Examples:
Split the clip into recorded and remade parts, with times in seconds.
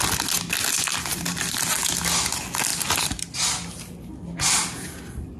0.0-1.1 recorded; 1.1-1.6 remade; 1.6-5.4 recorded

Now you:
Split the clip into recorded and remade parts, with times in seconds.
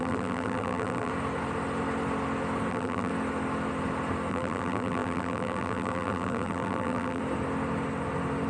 0.0-1.1 remade; 1.1-2.7 recorded; 2.7-3.1 remade; 3.1-4.3 recorded; 4.3-7.2 remade; 7.2-8.5 recorded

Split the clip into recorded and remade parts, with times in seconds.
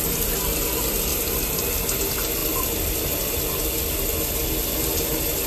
0.0-1.1 recorded; 1.1-1.6 remade; 1.6-2.4 recorded; 2.4-3.6 remade; 3.6-5.5 recorded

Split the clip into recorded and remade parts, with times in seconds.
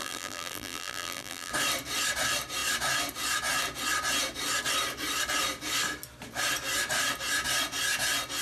0.0-1.5 remade; 1.5-8.4 recorded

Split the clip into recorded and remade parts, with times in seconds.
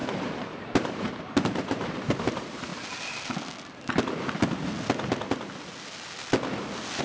0.0-2.7 remade; 2.7-7.0 recorded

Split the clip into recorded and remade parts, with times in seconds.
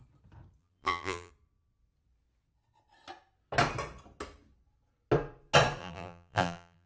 0.0-0.6 recorded; 0.6-1.3 remade; 1.3-5.8 recorded; 5.8-6.9 remade